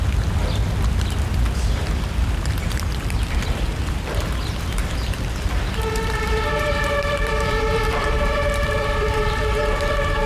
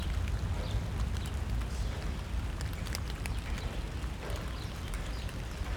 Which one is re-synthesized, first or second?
first